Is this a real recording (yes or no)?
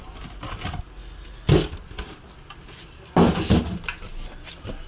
yes